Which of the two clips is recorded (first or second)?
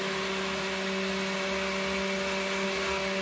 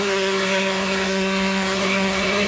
first